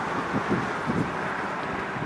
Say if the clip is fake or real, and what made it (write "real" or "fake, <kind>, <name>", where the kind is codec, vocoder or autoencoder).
real